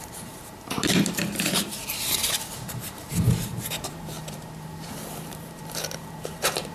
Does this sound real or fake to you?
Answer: fake